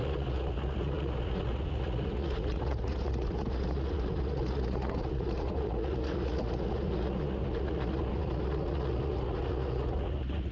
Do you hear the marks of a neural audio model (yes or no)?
yes